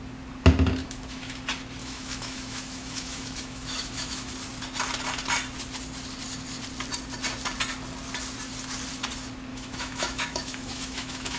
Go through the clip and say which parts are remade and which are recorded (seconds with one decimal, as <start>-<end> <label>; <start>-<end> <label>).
0.0-0.8 recorded; 0.8-1.4 remade; 1.4-1.8 recorded; 1.8-4.3 remade; 4.3-9.5 recorded; 9.5-11.4 remade